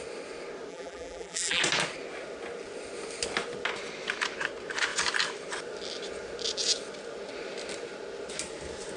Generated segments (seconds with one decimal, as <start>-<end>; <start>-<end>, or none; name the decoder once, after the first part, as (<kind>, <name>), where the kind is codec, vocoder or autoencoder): 0.7-1.6 (vocoder, BigVGAN v2)